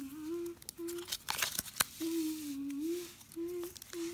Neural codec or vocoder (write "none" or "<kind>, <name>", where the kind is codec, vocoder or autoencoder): none